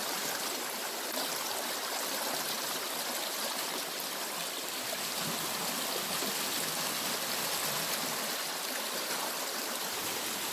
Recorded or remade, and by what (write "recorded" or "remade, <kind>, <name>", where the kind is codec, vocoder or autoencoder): recorded